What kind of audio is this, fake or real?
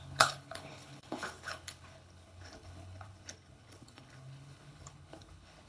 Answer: fake